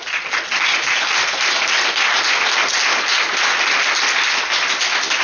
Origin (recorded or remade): recorded